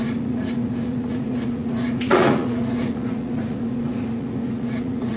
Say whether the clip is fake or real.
fake